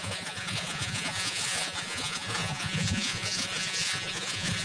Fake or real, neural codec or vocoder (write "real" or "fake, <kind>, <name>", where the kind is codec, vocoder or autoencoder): fake, vocoder, Vocos